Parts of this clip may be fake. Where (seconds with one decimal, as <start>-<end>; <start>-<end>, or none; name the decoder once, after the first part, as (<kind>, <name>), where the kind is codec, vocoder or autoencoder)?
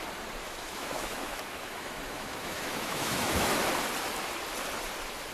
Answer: 0.4-3.6 (autoencoder, DAC-VAE)